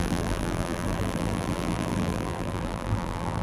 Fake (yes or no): yes